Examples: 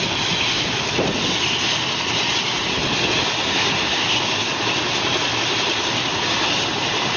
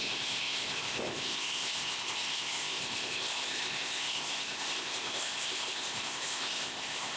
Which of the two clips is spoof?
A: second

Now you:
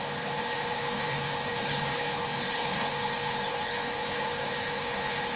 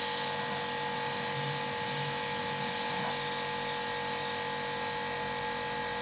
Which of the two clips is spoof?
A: first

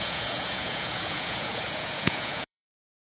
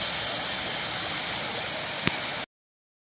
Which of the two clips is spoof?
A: first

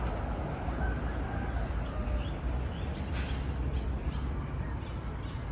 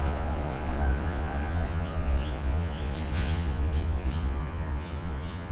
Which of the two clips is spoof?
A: second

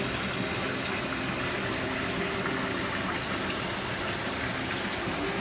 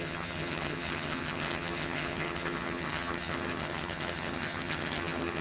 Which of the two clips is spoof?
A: second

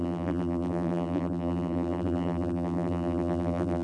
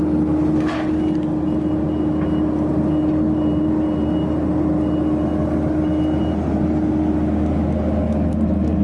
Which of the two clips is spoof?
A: first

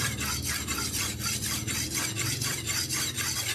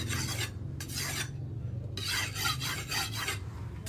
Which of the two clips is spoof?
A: first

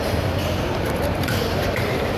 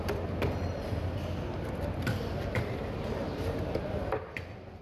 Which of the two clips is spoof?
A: first